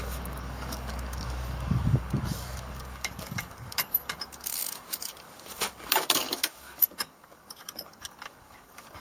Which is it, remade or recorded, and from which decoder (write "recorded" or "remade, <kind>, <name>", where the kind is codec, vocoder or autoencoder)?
remade, codec, DAC